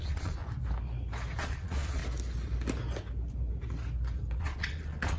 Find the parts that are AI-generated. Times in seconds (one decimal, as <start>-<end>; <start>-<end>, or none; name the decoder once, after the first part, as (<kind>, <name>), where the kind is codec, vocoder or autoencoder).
0.0-0.4 (vocoder, Vocos); 1.4-2.0; 4.4-5.2